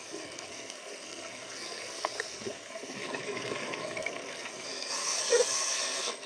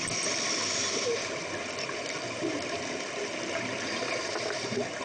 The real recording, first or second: second